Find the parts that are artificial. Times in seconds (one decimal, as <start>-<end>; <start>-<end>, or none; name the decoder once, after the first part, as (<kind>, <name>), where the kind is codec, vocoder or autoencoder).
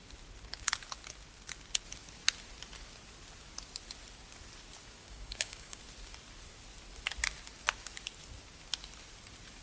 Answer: 5.0-5.8 (codec, DAC)